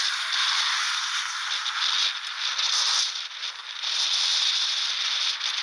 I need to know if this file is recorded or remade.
recorded